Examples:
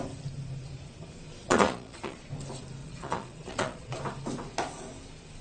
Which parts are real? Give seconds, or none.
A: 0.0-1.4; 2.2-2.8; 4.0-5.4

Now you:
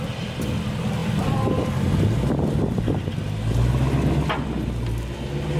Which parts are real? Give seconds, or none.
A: 0.0-5.6

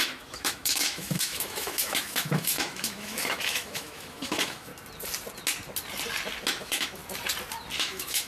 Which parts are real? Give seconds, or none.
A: 4.7-6.6; 7.0-7.8

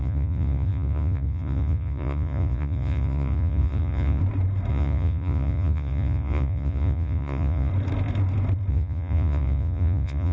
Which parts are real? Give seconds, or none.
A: 4.2-4.7; 7.7-8.7

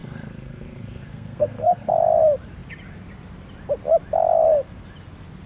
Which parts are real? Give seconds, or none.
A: 1.9-5.5

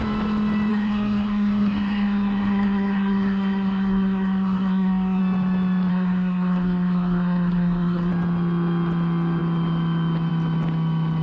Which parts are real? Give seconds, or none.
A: 0.0-0.7; 5.2-5.9; 8.1-11.2